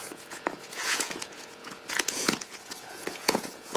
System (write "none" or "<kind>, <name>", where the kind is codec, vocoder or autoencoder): vocoder, Vocos